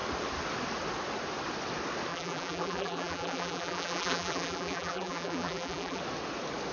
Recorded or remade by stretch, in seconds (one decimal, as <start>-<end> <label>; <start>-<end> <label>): 0.0-2.1 recorded; 2.1-6.0 remade; 6.0-6.7 recorded